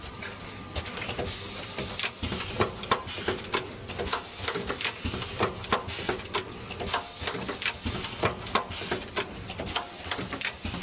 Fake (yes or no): no